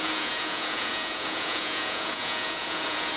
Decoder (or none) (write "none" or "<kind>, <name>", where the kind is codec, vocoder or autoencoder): vocoder, Vocos